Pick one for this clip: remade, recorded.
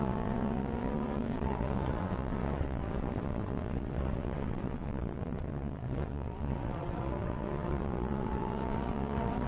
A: remade